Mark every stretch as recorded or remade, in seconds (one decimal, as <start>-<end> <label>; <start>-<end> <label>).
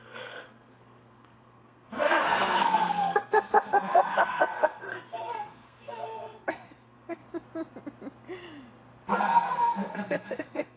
0.0-7.2 remade; 7.2-9.1 recorded; 9.1-10.8 remade